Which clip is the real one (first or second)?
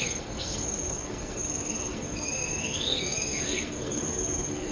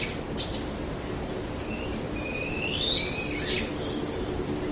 second